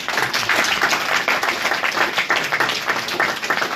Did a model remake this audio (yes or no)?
no